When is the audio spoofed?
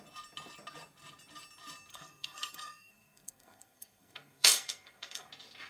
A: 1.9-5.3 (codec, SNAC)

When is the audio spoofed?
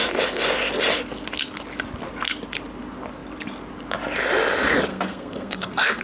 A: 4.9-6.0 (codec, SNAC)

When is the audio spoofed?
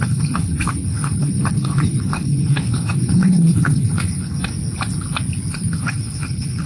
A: 0.0-4.5 (codec, HILCodec); 5.5-6.7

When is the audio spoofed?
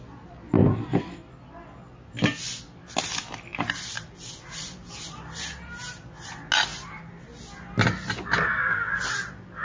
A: 3.5-6.3 (vocoder, BigVGAN v2); 6.7-7.4; 8.5-9.0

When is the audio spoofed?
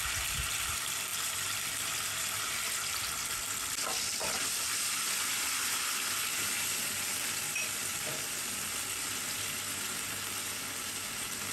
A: none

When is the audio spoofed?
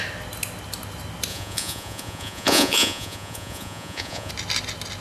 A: 1.3-4.3 (vocoder, Vocos)